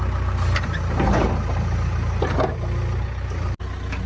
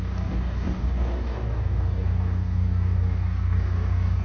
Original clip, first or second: first